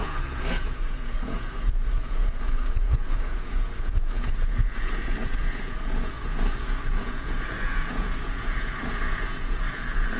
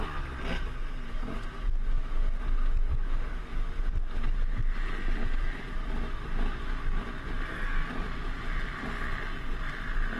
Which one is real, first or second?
second